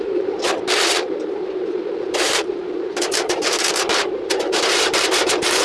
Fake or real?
fake